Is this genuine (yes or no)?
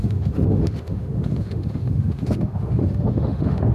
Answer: no